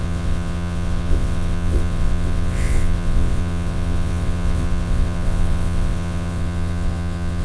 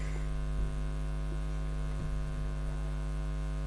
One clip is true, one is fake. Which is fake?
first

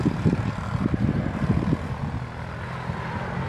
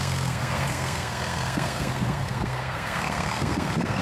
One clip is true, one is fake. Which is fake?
second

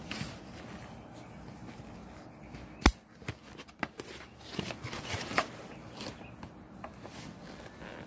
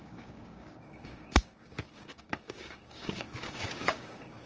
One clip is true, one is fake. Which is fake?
second